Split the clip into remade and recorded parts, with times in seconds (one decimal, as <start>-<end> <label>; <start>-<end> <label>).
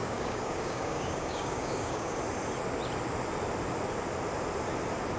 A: 0.0-2.2 remade; 2.2-5.2 recorded